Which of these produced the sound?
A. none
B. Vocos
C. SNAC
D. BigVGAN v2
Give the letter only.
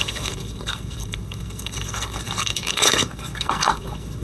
C